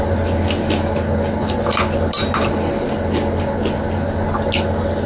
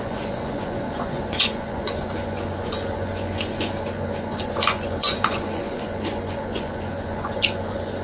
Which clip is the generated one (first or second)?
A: second